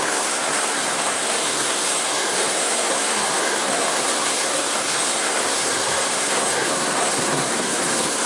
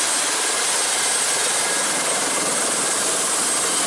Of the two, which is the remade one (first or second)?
first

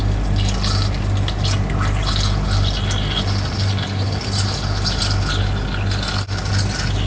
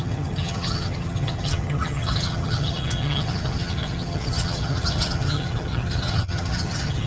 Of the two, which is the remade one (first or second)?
second